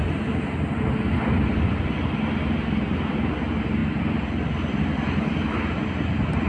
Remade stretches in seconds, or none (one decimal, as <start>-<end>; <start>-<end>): none

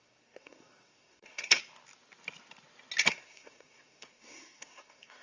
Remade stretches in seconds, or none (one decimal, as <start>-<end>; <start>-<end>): 0.0-1.6; 3.1-5.2

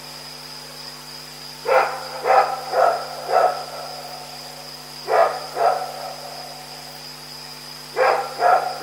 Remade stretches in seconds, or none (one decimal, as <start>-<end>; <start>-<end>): 0.0-8.8

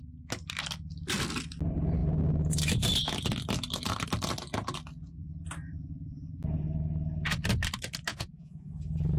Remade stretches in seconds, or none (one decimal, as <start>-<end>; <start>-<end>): 8.1-8.7

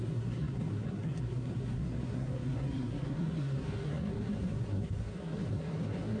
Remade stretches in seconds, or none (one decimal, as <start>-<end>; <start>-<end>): 0.0-6.2